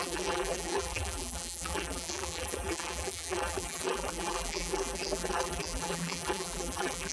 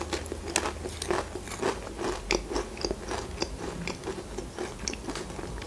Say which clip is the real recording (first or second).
second